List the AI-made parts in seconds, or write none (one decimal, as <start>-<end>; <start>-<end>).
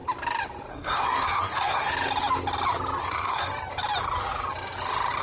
0.7-1.9; 3.0-3.5